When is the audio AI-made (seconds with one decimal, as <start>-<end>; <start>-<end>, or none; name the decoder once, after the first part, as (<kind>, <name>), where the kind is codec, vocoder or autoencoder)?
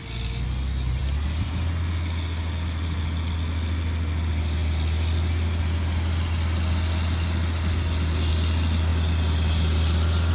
none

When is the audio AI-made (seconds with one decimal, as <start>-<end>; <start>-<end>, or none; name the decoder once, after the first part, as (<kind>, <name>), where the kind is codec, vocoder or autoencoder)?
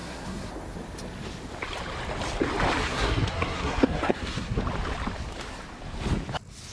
0.0-0.5 (codec, SNAC); 2.8-4.6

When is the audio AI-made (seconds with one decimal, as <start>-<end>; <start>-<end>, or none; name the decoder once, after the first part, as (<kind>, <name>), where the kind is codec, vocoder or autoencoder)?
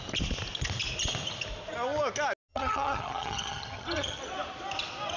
2.5-4.2 (vocoder, HiFi-GAN)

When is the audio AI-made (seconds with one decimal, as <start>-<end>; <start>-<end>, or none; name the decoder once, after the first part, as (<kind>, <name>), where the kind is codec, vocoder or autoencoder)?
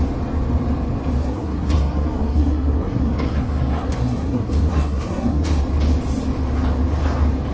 1.2-5.6 (codec, SNAC)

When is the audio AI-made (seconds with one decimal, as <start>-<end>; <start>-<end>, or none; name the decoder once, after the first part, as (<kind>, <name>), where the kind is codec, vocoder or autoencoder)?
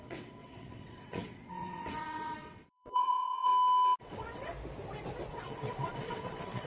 0.0-3.5 (vocoder, WaveNeXt); 4.0-4.5; 5.3-6.7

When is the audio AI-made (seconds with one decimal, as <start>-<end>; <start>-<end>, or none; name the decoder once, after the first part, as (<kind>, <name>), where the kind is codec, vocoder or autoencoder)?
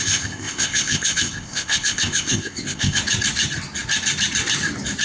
0.0-3.0 (codec, ZipCodec)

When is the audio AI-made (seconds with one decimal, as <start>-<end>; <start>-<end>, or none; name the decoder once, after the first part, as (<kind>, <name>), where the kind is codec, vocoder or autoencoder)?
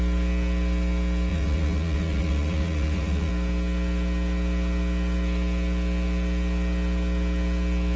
1.3-3.3 (vocoder, Vocos)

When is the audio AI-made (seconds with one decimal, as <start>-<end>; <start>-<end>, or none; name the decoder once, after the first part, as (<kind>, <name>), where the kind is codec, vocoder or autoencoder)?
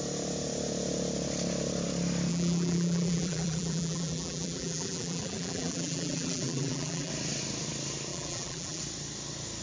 2.3-7.1 (vocoder, BigVGAN v2); 8.1-8.8